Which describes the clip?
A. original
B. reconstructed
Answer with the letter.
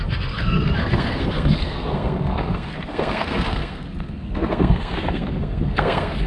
B